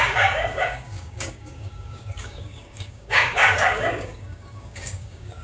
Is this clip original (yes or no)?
no